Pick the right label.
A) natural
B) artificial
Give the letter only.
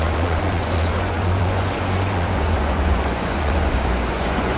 B